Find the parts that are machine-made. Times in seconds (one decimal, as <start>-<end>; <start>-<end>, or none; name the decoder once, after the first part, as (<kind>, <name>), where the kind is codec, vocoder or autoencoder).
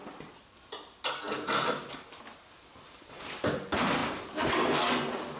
4.0-4.5 (vocoder, BigVGAN v2)